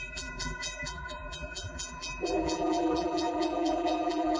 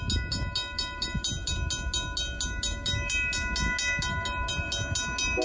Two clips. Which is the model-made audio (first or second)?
first